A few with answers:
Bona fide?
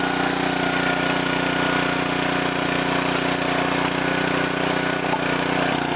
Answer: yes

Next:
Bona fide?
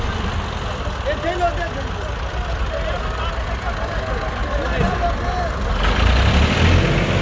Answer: yes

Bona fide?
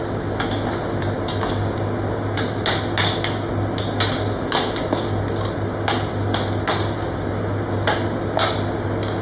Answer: yes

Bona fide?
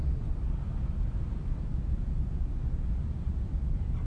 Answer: yes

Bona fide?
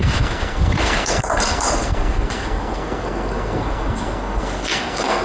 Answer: no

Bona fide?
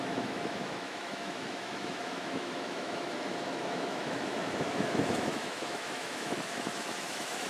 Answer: no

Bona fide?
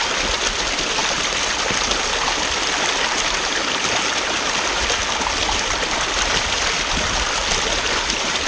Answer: yes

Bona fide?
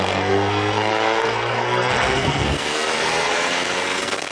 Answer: no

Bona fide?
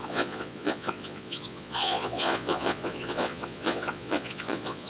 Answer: no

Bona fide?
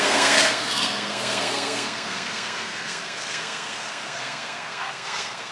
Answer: no